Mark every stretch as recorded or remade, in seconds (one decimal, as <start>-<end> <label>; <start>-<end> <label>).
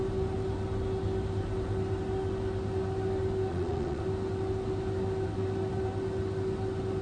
0.0-3.5 recorded; 3.5-4.0 remade; 4.0-7.0 recorded